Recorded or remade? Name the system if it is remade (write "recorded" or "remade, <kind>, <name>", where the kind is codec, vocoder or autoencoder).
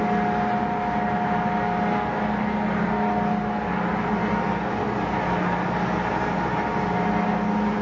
recorded